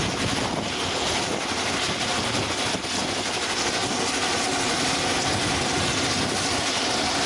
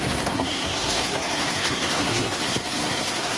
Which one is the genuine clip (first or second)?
first